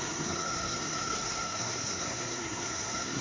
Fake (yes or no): yes